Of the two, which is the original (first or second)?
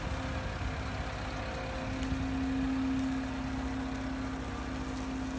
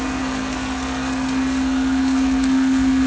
first